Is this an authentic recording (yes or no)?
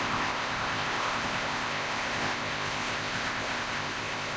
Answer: no